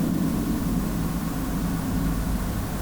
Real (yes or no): yes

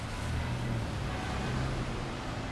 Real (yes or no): yes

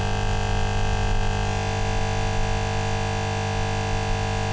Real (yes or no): yes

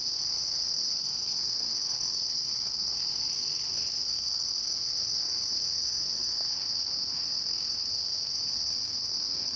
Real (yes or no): no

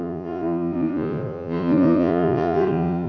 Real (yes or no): no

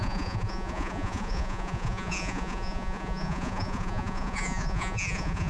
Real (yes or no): no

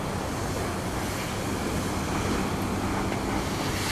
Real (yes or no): yes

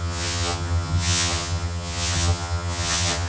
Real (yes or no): no